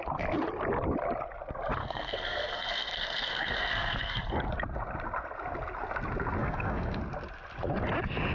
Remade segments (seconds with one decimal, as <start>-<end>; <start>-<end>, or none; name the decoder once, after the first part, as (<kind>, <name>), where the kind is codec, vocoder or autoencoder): 1.8-4.2 (codec, SNAC); 6.4-7.0